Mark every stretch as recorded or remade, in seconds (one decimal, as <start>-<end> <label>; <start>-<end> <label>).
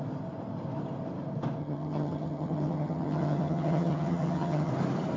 0.0-1.6 recorded; 1.6-4.7 remade; 4.7-5.2 recorded